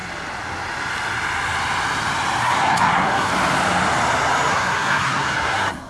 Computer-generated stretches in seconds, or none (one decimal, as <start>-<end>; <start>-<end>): 2.4-3.3; 4.5-5.9